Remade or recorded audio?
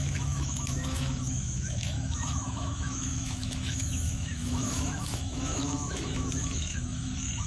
remade